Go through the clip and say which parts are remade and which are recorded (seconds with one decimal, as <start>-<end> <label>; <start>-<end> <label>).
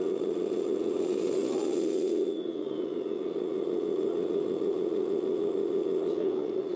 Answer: 0.0-6.8 remade